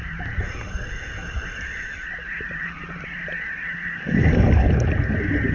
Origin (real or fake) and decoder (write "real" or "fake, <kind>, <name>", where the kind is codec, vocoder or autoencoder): real